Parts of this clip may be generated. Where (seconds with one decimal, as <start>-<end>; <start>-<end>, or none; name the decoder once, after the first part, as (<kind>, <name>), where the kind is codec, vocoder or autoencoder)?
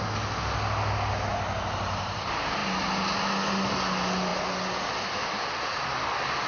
none